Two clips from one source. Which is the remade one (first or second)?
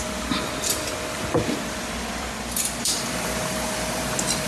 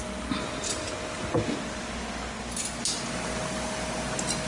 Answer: first